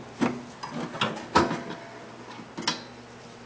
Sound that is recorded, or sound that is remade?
recorded